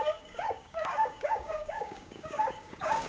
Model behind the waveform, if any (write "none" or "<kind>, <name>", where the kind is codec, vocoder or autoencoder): codec, DAC